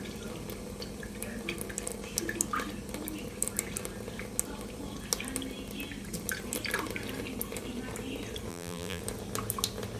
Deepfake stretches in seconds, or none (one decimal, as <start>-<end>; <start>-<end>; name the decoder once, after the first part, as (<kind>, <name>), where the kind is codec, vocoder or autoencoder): 8.5-9.0 (vocoder, BigVGAN v2)